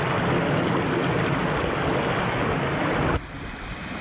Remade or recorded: recorded